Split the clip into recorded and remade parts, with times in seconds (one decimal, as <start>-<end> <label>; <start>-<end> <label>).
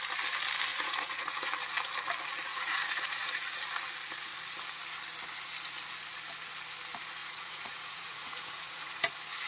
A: 0.0-0.7 recorded; 0.7-1.5 remade; 1.5-2.5 recorded; 2.5-3.3 remade; 3.3-7.2 recorded; 7.2-8.9 remade; 8.9-9.5 recorded